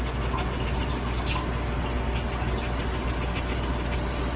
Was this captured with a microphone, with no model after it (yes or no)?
yes